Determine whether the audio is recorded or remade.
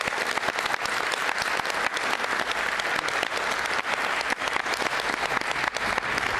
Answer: recorded